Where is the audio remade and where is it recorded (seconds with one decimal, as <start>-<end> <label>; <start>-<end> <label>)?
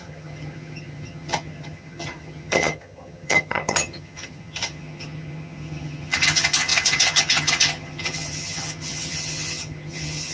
0.0-10.3 remade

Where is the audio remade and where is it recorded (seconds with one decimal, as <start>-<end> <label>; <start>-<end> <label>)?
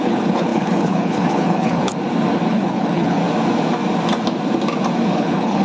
0.0-1.9 remade; 1.9-2.5 recorded; 2.5-3.2 remade; 3.2-5.0 recorded; 5.0-5.6 remade